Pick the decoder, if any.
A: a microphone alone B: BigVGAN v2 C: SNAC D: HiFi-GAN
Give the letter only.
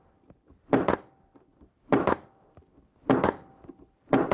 A